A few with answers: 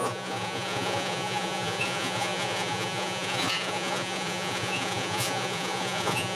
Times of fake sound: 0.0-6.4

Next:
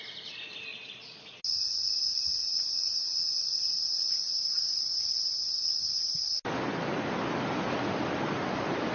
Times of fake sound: 0.7-1.4; 2.4-6.2

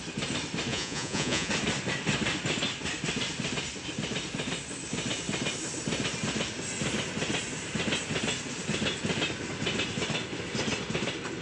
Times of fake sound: 0.7-1.5

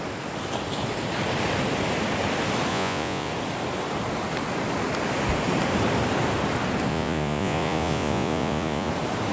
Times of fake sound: 2.7-3.3; 6.9-8.9

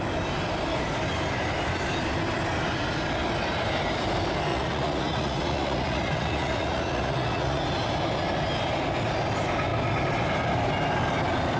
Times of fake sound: 4.5-7.6

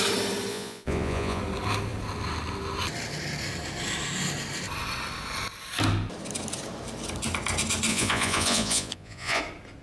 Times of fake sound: 0.5-1.4; 7.9-9.4